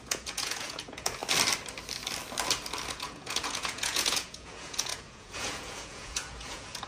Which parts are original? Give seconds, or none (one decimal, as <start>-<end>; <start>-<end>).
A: 1.2-2.9